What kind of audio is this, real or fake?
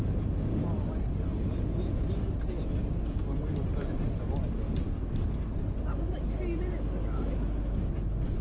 real